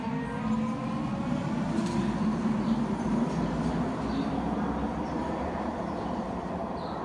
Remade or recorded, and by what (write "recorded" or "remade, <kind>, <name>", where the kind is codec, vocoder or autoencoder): recorded